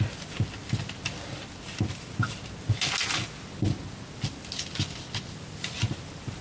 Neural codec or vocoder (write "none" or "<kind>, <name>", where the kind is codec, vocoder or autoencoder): none